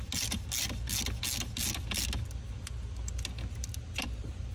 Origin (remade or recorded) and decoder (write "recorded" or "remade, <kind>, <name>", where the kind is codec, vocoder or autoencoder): recorded